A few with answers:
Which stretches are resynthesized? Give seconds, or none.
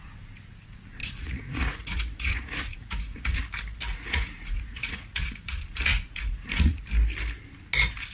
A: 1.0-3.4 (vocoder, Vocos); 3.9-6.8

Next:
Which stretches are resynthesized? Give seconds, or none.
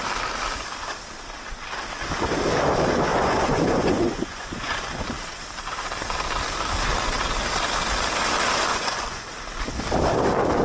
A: 3.1-4.8 (vocoder, Vocos); 8.7-9.3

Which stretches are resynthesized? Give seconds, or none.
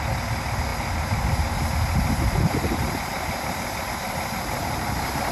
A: none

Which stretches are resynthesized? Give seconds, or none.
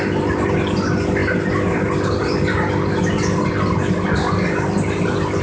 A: none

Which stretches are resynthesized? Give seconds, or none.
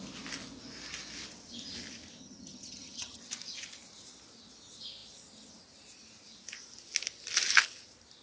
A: 2.2-3.2 (vocoder, HiFi-GAN)